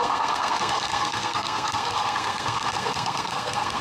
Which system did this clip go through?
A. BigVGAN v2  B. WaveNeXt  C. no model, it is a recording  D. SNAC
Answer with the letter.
D